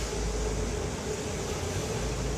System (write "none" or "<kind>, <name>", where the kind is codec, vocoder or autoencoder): none